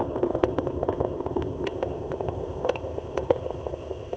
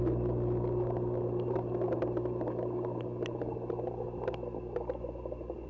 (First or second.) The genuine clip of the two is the second